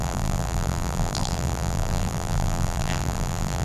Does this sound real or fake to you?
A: fake